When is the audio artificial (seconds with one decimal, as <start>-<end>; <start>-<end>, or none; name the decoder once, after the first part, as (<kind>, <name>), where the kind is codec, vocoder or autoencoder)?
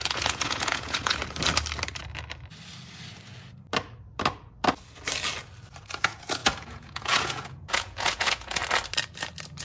0.0-1.2 (vocoder, Vocos); 5.8-8.6